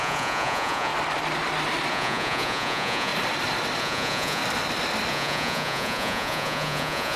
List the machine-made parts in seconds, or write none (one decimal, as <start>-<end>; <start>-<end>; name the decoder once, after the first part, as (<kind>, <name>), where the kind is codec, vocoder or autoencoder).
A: 0.0-0.9 (vocoder, Vocos); 1.9-3.1; 3.8-4.4; 5.1-7.2